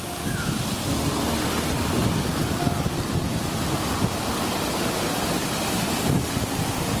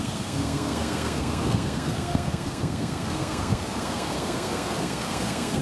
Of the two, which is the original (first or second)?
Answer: first